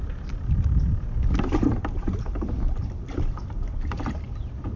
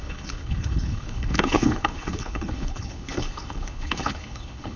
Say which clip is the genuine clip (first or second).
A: first